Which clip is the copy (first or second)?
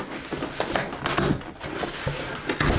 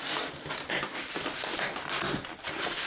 second